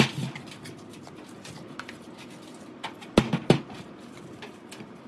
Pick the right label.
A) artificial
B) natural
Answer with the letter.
B